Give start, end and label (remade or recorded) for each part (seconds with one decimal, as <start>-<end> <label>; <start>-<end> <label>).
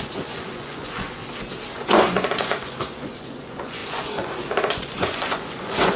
0.0-1.2 remade; 1.2-1.7 recorded; 1.7-6.0 remade